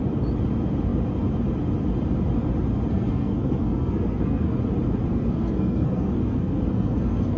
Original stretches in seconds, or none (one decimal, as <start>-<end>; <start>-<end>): 0.0-2.9; 4.6-5.1